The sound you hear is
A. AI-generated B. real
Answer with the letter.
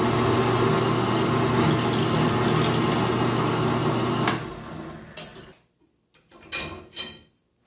B